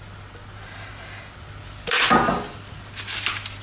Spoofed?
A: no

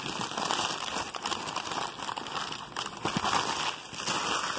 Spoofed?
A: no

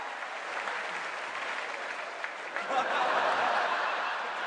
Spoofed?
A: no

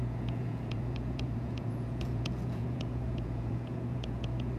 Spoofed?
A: yes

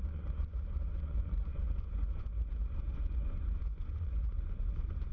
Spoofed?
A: yes